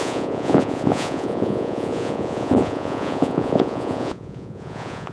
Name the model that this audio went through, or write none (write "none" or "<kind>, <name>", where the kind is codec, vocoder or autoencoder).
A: vocoder, Vocos